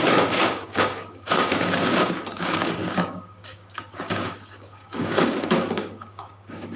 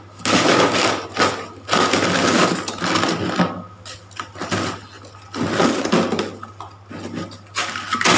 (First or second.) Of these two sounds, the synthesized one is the first